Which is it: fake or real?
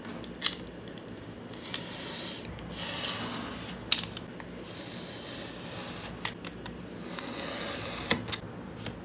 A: real